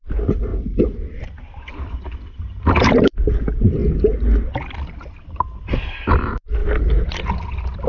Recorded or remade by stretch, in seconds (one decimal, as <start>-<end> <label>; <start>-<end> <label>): 0.0-3.8 remade; 3.8-4.9 recorded; 4.9-6.6 remade; 6.6-7.3 recorded; 7.3-7.9 remade